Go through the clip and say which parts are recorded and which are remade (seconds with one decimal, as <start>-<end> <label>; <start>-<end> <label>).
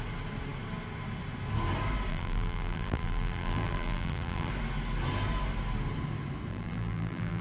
0.0-2.1 recorded; 2.1-4.5 remade; 4.5-6.5 recorded; 6.5-7.4 remade